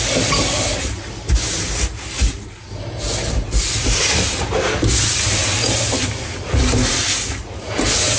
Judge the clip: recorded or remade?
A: recorded